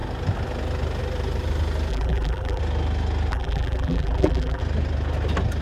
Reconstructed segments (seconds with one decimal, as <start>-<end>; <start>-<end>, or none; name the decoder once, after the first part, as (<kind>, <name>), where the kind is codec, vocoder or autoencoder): 1.9-2.6 (vocoder, BigVGAN v2); 3.3-4.6